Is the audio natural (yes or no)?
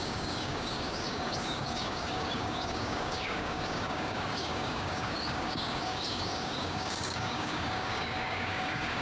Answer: no